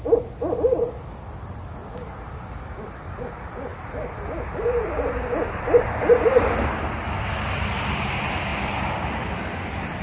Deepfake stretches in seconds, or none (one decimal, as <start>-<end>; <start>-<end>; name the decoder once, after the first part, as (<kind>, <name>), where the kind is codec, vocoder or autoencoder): none